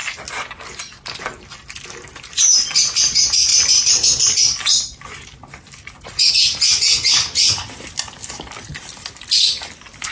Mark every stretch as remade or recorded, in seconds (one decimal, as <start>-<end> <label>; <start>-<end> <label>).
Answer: 0.0-10.1 recorded